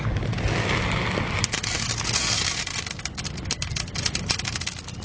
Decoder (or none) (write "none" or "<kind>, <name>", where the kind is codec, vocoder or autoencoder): none